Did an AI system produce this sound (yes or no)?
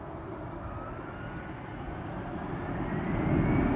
no